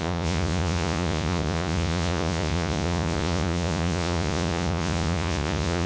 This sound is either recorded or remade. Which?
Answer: remade